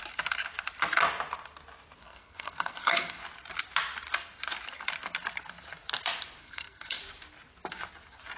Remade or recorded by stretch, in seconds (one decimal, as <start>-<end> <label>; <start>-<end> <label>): 0.0-2.0 recorded; 2.0-3.2 remade; 3.2-6.4 recorded; 6.4-7.0 remade; 7.0-8.4 recorded